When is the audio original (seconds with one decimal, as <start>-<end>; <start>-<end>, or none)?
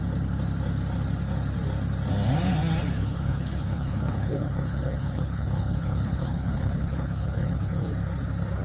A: 0.0-3.0; 7.9-8.6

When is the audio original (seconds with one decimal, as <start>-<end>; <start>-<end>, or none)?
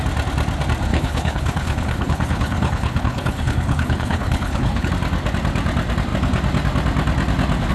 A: 0.0-0.9; 4.9-7.7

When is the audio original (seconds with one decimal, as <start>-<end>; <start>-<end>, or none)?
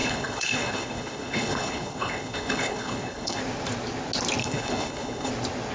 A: 3.4-4.4; 5.3-5.7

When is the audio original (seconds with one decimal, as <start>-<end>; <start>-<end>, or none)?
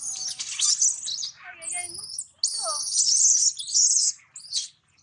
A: 0.0-5.0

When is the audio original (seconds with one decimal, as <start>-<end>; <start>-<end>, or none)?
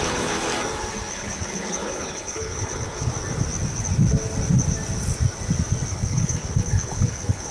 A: 0.5-1.1; 3.1-5.9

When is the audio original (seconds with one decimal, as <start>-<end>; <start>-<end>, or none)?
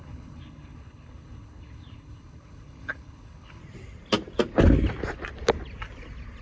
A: 3.6-6.4